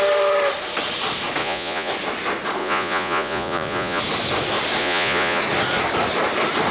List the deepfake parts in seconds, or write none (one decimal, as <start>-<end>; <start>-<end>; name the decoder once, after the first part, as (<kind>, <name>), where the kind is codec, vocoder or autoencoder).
1.4-1.9 (vocoder, Vocos); 2.6-4.0; 4.8-5.4